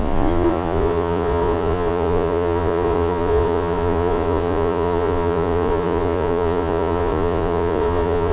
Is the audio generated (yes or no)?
yes